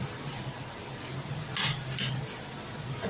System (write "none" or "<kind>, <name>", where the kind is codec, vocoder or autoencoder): none